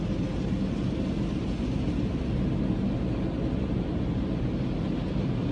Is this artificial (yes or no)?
no